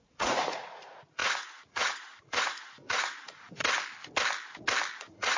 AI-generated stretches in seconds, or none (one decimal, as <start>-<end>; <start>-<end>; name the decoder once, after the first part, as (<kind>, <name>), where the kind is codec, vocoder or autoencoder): 0.0-3.6 (vocoder, Vocos); 5.0-5.4